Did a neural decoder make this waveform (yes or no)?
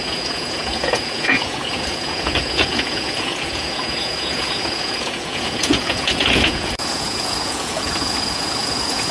yes